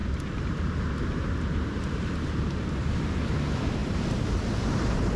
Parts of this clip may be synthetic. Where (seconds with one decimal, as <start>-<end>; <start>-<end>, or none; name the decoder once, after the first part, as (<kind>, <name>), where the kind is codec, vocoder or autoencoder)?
0.0-3.1 (vocoder, BigVGAN v2); 3.8-4.7